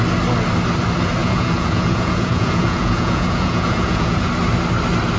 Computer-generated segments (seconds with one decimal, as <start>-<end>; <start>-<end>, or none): 1.2-4.3